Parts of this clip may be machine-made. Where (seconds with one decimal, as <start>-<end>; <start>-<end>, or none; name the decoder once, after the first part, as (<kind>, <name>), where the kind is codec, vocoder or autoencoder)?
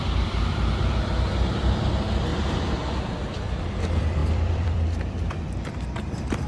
0.0-6.5 (vocoder, BigVGAN v2)